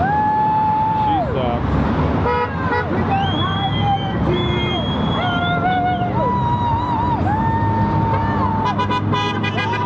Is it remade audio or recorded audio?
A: recorded